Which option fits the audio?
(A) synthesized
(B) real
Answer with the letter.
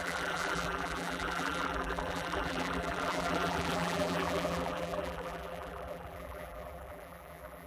A